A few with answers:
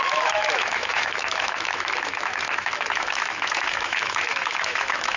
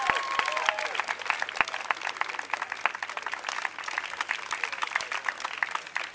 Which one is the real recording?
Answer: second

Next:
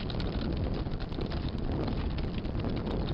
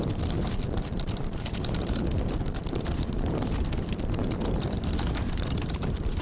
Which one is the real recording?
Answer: first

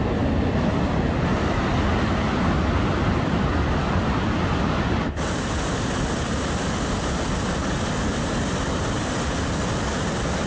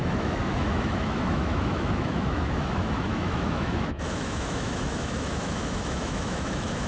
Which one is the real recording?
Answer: first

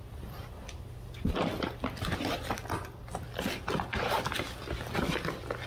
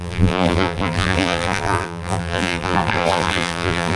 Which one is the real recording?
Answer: first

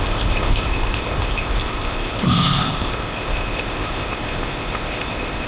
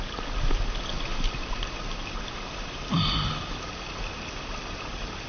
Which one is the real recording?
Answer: second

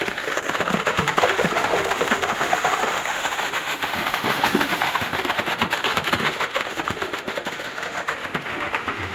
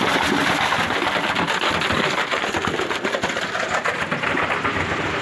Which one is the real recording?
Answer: second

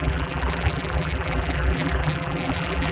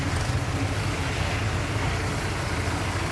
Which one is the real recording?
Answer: second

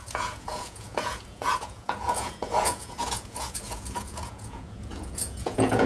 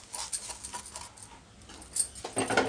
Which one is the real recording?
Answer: second